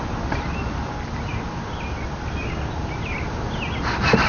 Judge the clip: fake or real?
real